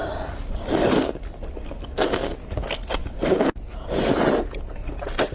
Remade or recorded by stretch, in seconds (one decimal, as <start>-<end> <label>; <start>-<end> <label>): 0.0-0.9 remade; 0.9-3.0 recorded; 3.0-4.2 remade; 4.2-5.3 recorded